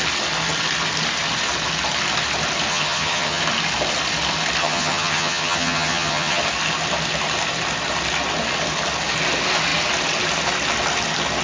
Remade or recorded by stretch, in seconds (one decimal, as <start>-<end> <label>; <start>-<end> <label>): 0.0-2.7 recorded; 2.7-3.4 remade; 3.4-4.6 recorded; 4.6-6.4 remade; 6.4-11.4 recorded